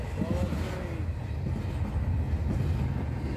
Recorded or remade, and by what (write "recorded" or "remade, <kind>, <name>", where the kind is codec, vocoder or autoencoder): recorded